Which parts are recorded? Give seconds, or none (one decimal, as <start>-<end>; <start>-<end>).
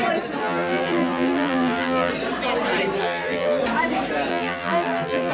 0.0-0.4; 2.1-3.0; 3.6-4.3